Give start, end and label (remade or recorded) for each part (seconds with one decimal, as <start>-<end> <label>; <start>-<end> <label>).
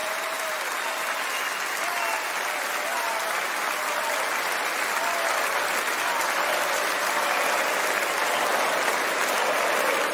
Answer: 0.0-0.6 remade; 0.6-10.1 recorded